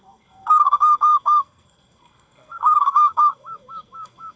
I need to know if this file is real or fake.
fake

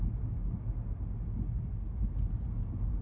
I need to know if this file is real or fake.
real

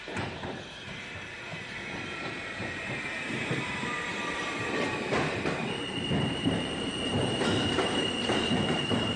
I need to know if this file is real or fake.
fake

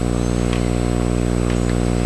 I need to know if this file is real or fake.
real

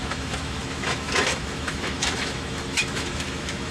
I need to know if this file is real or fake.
fake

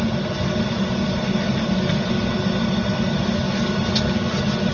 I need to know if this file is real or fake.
real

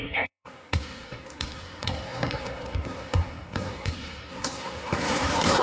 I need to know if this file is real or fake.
fake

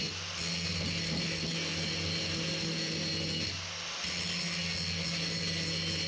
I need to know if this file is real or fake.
real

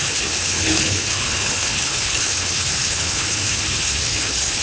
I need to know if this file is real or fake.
fake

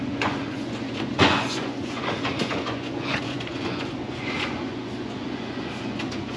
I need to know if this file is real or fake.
fake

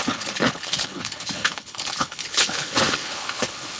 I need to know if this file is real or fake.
fake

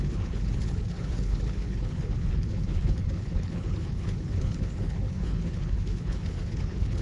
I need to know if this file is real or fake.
fake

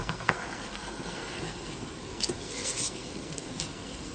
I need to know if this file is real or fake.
fake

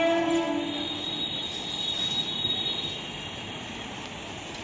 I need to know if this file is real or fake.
real